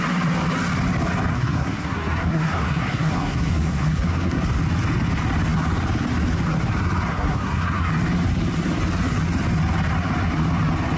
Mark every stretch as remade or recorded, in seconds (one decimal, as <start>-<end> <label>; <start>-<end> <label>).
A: 0.0-1.3 recorded; 1.3-4.4 remade; 4.4-7.1 recorded; 7.1-7.9 remade; 7.9-11.0 recorded